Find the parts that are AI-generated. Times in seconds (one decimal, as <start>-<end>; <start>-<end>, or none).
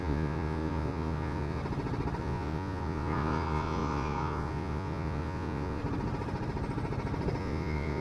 0.0-1.6; 2.2-5.8; 7.4-8.0